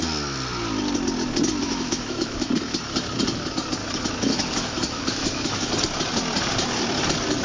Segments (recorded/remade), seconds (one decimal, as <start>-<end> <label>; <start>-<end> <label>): 0.0-1.6 recorded; 1.6-2.5 remade; 2.5-3.8 recorded; 3.8-5.7 remade; 5.7-7.4 recorded